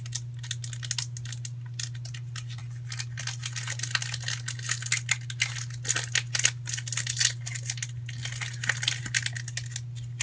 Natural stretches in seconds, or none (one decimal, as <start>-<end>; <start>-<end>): 0.0-10.2